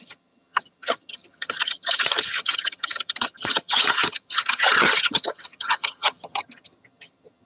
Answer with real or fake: fake